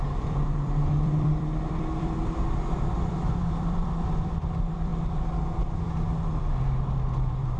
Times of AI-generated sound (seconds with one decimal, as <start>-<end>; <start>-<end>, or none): 0.0-4.9; 6.9-7.6